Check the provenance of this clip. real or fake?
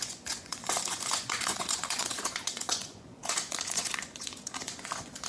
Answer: fake